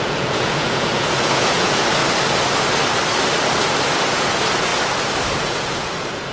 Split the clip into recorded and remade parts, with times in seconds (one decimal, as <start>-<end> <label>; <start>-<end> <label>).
0.0-2.0 remade; 2.0-3.9 recorded; 3.9-4.7 remade; 4.7-5.4 recorded; 5.4-6.3 remade